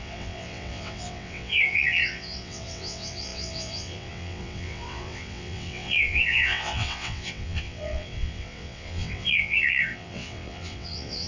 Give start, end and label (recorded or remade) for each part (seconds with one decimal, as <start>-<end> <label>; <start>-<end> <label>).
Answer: 0.0-11.3 remade